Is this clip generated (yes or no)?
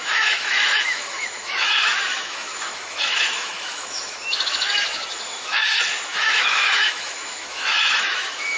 yes